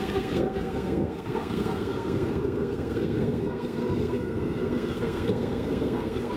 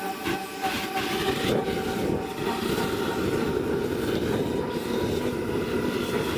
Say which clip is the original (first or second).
second